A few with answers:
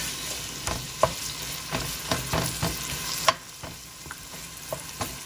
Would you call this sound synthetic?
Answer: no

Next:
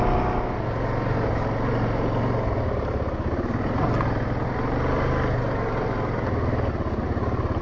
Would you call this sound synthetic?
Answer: no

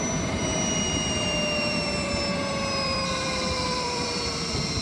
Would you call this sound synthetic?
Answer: yes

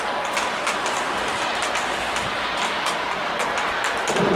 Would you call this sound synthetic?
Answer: no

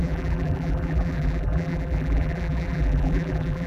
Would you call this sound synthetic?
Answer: yes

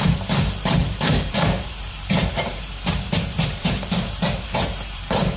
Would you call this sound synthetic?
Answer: yes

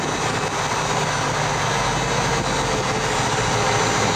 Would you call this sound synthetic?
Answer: no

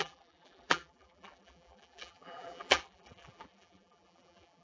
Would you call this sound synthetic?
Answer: yes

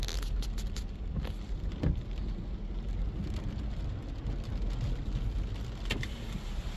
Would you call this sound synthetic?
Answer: no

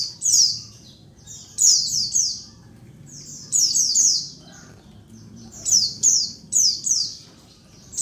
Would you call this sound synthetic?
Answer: yes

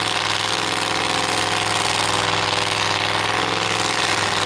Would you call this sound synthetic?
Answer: no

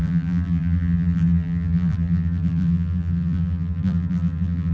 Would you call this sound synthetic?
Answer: yes